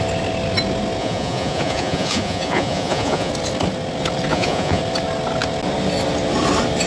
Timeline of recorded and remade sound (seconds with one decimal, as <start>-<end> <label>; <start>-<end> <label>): 0.0-1.0 recorded; 1.0-3.3 remade; 3.3-4.3 recorded; 4.3-4.8 remade; 4.8-6.9 recorded